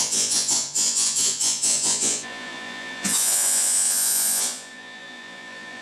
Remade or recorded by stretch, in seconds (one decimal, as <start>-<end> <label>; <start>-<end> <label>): 0.0-5.8 remade